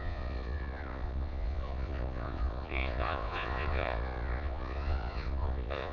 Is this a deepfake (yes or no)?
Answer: yes